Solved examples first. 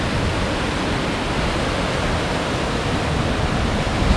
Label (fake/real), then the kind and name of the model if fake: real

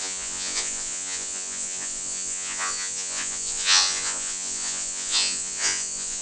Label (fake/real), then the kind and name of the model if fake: fake, vocoder, Vocos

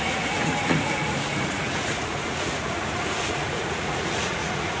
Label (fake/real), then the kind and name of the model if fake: fake, vocoder, Vocos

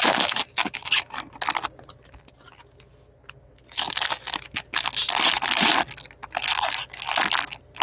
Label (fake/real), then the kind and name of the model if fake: real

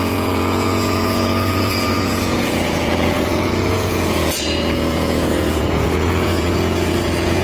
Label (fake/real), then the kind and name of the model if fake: fake, vocoder, Vocos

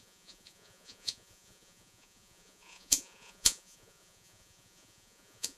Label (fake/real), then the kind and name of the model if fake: fake, vocoder, Vocos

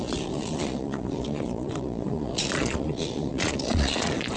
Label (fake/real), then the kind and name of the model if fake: fake, vocoder, Vocos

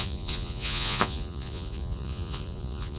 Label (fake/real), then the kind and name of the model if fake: fake, vocoder, Vocos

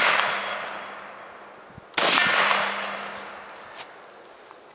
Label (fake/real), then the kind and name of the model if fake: real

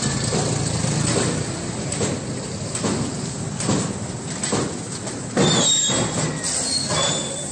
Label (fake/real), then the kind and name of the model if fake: real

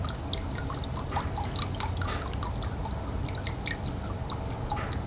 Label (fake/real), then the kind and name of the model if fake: real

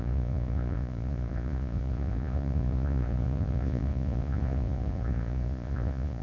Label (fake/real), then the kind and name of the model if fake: fake, vocoder, Vocos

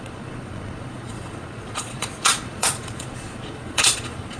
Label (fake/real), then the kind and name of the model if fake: fake, vocoder, Vocos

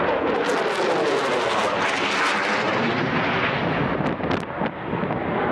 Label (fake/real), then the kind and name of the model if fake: real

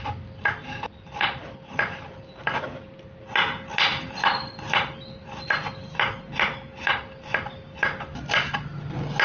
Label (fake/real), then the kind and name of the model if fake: real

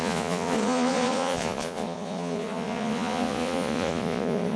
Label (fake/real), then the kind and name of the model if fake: fake, vocoder, Vocos